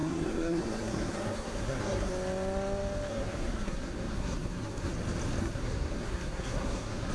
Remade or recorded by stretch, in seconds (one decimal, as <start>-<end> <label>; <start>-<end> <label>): 0.0-2.1 remade; 2.1-3.1 recorded; 3.1-4.9 remade; 4.9-5.4 recorded; 5.4-7.1 remade